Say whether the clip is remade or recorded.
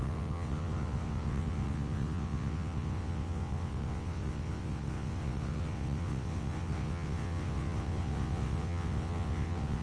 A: remade